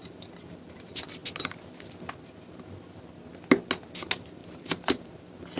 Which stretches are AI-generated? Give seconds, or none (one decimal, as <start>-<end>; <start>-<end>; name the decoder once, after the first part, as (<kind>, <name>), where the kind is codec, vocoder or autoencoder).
4.4-5.1 (vocoder, BigVGAN v2)